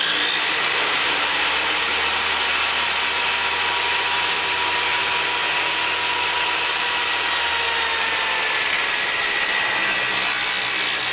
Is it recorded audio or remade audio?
recorded